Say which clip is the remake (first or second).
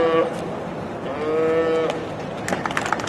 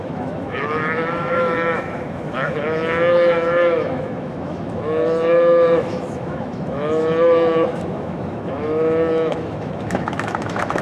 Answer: second